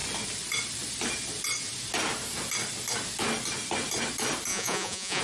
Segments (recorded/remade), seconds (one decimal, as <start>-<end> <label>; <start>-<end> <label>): 0.0-4.5 recorded; 4.5-5.2 remade